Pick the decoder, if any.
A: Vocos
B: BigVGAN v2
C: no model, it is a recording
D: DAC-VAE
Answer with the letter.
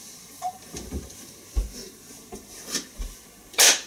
B